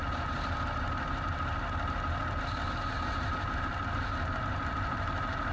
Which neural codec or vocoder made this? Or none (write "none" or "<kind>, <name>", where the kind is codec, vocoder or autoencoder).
vocoder, BigVGAN v2